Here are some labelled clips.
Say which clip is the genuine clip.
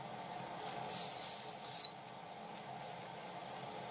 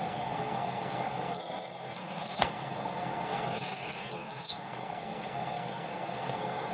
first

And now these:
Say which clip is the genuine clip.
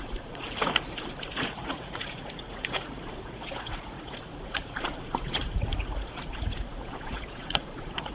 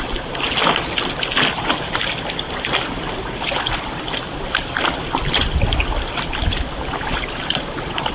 second